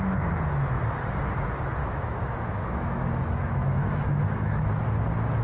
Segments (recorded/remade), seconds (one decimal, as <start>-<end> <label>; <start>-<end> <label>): 0.0-1.8 recorded; 1.8-4.8 remade; 4.8-5.4 recorded